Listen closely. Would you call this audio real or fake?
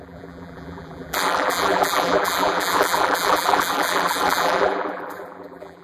fake